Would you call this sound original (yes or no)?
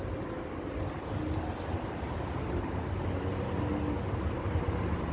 yes